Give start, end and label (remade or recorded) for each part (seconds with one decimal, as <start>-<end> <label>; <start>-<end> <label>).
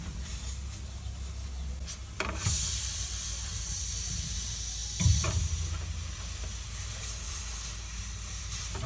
0.0-0.4 remade; 0.4-1.9 recorded; 1.9-7.4 remade; 7.4-8.0 recorded; 8.0-8.9 remade